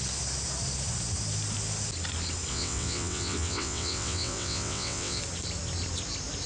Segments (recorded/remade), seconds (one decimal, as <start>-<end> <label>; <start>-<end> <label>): 0.0-2.5 recorded; 2.5-5.2 remade; 5.2-6.5 recorded